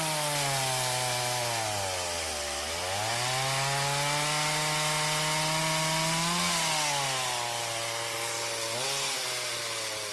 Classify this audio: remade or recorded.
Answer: recorded